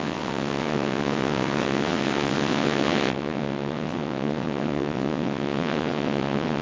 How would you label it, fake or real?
fake